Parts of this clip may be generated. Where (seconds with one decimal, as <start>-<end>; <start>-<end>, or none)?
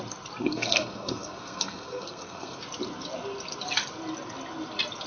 0.4-2.6